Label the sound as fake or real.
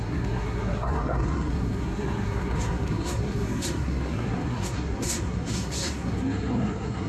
fake